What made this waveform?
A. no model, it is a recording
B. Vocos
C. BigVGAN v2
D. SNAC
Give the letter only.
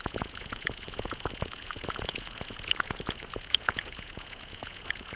B